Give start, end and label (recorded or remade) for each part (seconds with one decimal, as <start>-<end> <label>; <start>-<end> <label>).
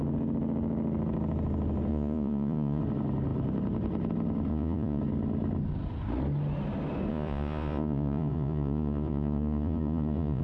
0.0-1.9 recorded; 1.9-2.8 remade; 2.8-4.5 recorded; 4.5-5.0 remade; 5.0-7.1 recorded; 7.1-10.4 remade